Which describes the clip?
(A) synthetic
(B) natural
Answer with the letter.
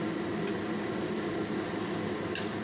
B